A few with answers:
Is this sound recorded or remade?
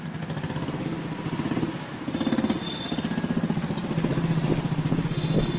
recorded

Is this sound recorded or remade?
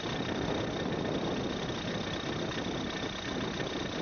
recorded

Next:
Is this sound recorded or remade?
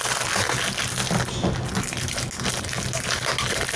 recorded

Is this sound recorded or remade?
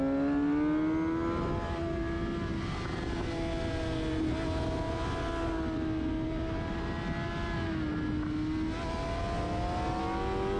recorded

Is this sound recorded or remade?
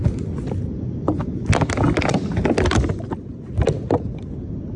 recorded